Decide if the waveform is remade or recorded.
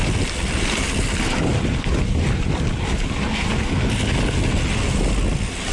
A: recorded